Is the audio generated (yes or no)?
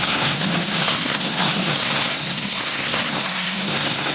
yes